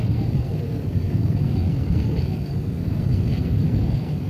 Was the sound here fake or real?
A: fake